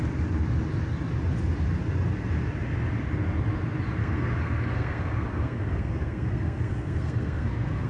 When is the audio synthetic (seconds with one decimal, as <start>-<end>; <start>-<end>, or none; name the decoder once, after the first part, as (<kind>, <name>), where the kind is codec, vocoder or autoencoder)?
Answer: 4.0-7.9 (codec, SNAC)